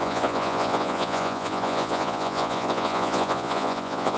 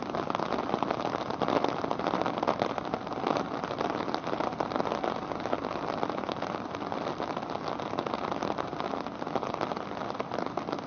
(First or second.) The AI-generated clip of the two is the first